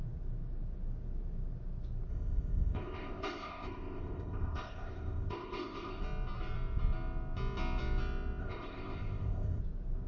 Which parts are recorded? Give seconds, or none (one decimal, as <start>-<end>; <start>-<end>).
0.0-2.1; 6.0-8.4; 9.6-10.1